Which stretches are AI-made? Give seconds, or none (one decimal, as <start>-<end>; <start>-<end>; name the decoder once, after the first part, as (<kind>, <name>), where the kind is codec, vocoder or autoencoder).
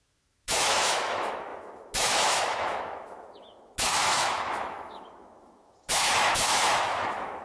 0.0-7.4 (autoencoder, DAC-VAE)